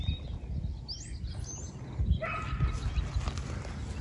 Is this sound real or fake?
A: real